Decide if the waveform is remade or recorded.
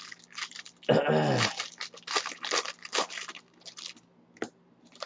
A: recorded